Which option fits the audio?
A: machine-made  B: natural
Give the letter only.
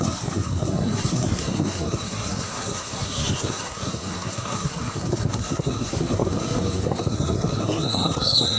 A